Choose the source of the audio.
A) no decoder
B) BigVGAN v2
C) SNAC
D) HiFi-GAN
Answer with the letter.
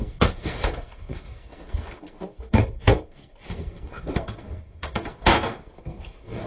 C